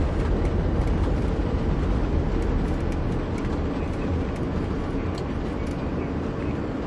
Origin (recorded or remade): recorded